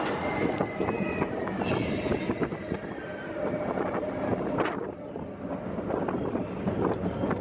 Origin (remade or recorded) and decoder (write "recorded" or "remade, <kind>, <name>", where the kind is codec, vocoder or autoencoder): recorded